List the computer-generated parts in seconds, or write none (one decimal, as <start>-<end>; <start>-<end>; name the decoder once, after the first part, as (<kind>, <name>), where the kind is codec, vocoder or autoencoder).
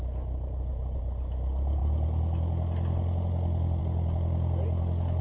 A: none